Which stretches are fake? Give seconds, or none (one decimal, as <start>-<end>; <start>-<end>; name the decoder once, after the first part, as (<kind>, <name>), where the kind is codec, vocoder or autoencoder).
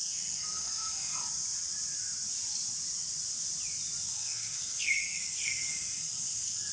0.0-1.3 (codec, SNAC); 4.1-6.7